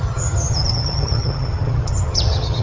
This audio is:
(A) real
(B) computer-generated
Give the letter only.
B